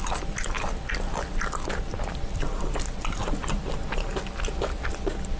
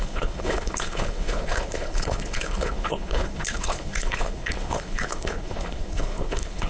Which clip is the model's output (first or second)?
second